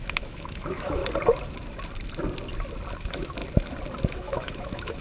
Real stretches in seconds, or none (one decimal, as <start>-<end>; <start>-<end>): 1.0-3.0; 3.4-4.1